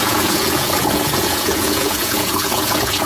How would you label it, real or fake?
fake